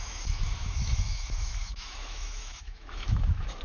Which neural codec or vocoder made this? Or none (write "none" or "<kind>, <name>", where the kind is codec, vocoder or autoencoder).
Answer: autoencoder, DAC-VAE